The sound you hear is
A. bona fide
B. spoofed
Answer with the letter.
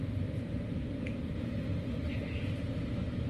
B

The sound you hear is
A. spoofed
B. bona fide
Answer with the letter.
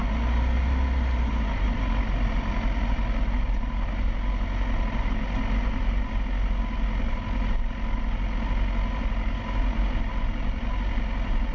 B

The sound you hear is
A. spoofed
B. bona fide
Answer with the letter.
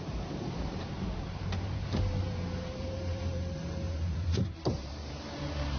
A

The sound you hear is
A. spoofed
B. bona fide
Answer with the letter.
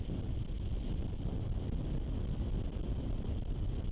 B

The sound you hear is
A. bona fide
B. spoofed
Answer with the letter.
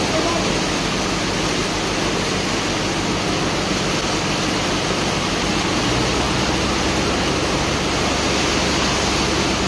A